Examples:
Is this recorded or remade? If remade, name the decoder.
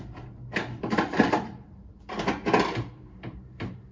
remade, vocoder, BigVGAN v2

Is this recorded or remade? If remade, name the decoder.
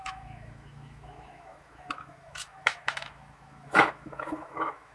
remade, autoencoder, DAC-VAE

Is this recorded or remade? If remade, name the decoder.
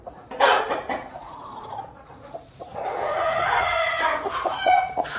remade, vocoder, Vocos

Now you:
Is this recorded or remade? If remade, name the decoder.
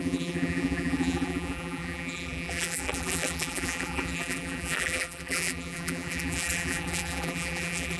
remade, vocoder, BigVGAN v2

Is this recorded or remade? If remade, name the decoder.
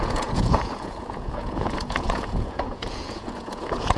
remade, vocoder, Vocos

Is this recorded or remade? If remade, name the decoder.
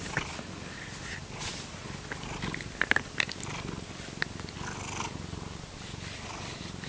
recorded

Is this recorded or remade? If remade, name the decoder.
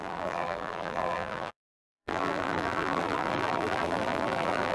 remade, vocoder, BigVGAN v2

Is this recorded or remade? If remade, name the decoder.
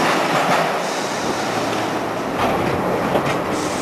recorded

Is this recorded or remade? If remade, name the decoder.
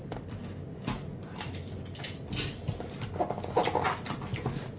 recorded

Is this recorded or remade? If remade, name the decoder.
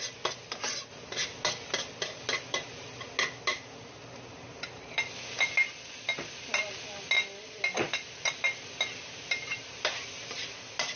recorded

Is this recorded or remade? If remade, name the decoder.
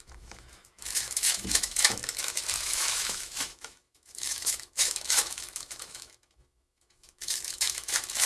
remade, autoencoder, DAC-VAE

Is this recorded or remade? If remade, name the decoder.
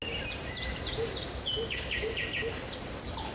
recorded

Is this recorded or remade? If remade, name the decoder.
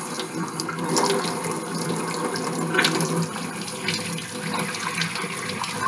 recorded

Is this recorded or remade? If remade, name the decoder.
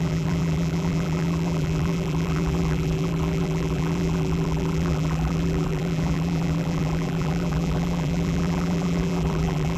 remade, vocoder, BigVGAN v2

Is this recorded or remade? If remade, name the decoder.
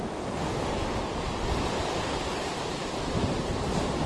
recorded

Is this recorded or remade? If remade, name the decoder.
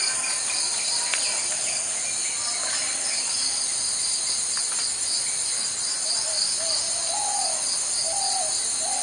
recorded